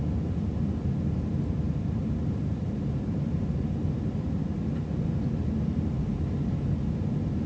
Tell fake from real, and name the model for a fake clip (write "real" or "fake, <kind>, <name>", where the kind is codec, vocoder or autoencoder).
real